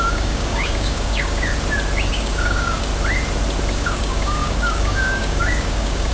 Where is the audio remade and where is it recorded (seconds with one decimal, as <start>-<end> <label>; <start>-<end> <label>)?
0.0-1.5 remade; 1.5-2.1 recorded; 2.1-2.9 remade; 2.9-3.7 recorded; 3.7-6.1 remade